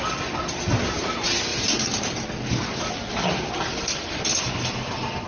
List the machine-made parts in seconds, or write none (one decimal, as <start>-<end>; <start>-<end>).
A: none